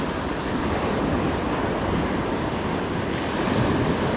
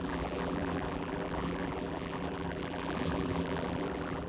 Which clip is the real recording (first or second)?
first